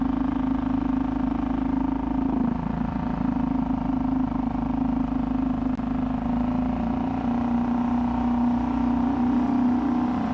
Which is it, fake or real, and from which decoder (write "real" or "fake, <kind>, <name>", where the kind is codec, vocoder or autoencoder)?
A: real